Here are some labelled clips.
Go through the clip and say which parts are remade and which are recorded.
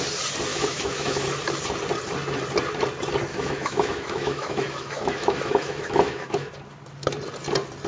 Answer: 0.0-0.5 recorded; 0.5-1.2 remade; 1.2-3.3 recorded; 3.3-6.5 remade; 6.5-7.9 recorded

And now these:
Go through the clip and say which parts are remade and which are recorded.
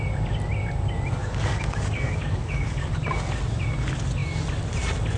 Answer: 0.0-1.2 recorded; 1.2-2.9 remade; 2.9-5.2 recorded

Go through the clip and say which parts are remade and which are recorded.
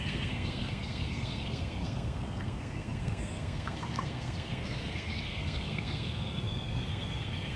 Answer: 0.0-7.6 remade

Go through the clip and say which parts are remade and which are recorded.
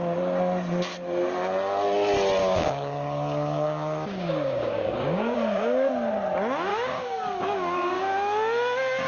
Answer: 0.0-2.4 recorded; 2.4-5.9 remade; 5.9-6.7 recorded; 6.7-8.0 remade; 8.0-9.1 recorded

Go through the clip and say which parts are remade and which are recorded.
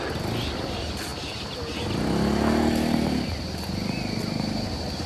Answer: 0.0-5.1 recorded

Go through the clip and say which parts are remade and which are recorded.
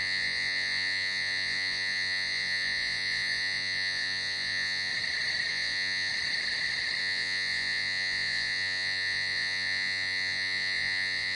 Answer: 0.0-4.9 remade; 4.9-5.5 recorded; 5.5-6.1 remade; 6.1-7.0 recorded; 7.0-11.3 remade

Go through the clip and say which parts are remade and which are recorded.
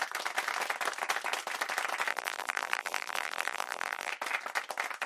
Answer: 0.0-2.1 recorded; 2.1-4.1 remade; 4.1-5.1 recorded